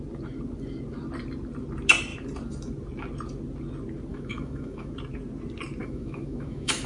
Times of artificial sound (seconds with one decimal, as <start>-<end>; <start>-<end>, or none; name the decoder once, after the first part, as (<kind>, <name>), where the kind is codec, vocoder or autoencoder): 4.1-4.9 (autoencoder, DAC-VAE); 5.8-6.9